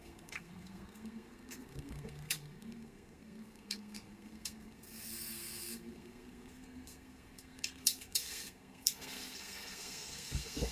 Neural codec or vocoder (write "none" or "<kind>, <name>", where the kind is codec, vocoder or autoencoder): codec, SNAC